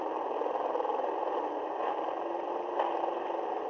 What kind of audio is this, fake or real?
real